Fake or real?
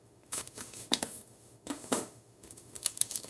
fake